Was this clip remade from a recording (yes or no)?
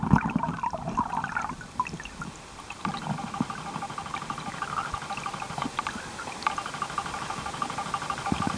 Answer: no